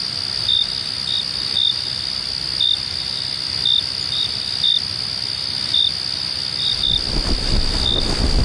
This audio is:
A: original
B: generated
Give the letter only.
A